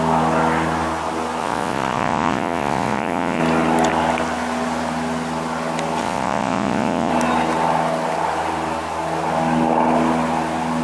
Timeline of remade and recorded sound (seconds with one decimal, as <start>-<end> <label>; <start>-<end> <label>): 0.0-1.4 recorded; 1.4-3.4 remade; 3.4-6.0 recorded; 6.0-7.1 remade; 7.1-10.8 recorded